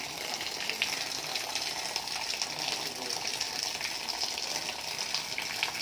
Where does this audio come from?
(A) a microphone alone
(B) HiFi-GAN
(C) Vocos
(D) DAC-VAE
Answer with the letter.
A